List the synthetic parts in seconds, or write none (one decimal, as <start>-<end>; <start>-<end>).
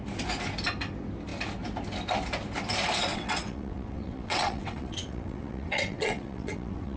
3.1-7.0